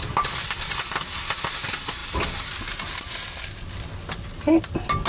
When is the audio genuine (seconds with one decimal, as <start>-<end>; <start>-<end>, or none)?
0.0-5.1